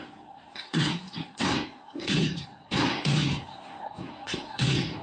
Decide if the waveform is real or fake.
fake